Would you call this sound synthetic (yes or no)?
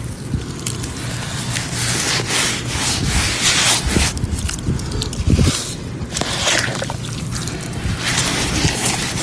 no